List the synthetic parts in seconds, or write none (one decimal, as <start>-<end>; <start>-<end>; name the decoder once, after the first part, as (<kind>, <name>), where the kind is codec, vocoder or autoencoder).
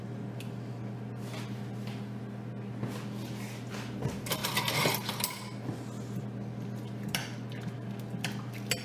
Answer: none